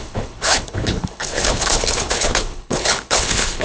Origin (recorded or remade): remade